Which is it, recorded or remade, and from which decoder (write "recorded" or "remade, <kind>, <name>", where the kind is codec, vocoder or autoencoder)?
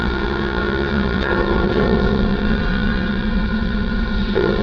remade, vocoder, WaveNeXt